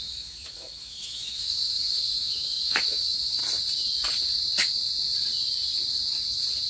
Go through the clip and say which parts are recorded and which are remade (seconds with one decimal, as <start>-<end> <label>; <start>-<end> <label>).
0.0-3.4 remade; 3.4-6.7 recorded